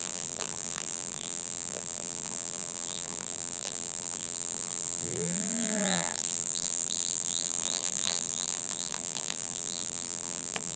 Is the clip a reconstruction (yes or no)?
yes